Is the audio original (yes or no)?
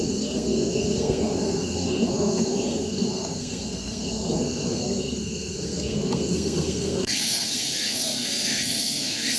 no